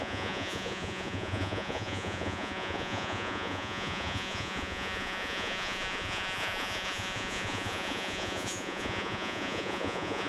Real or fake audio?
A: fake